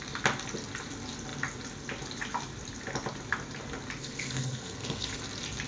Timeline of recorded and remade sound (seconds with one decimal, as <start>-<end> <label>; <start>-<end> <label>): 0.0-4.0 recorded; 4.0-5.2 remade; 5.2-5.7 recorded